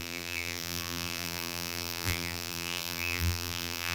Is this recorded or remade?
remade